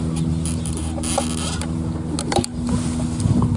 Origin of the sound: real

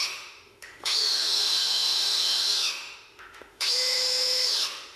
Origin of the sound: fake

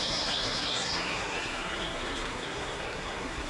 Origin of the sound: fake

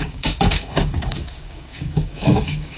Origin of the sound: fake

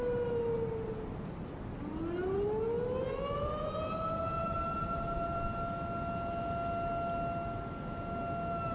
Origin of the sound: real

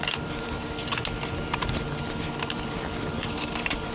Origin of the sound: real